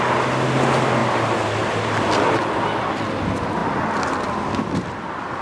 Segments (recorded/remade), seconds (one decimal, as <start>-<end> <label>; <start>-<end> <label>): 0.0-5.4 recorded